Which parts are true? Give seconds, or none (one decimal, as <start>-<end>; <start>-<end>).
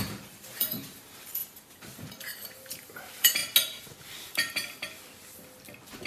3.4-6.1